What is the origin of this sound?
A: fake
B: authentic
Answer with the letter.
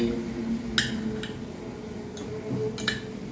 B